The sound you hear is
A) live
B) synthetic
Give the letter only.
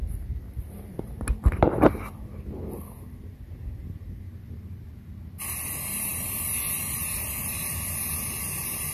A